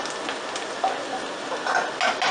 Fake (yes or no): no